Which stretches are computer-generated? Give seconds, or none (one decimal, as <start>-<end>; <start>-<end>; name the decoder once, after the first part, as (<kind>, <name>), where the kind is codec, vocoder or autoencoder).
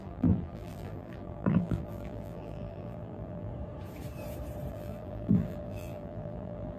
0.0-3.5 (vocoder, BigVGAN v2); 4.7-6.8